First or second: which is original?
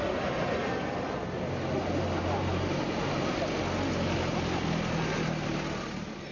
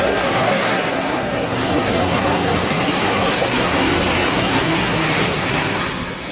first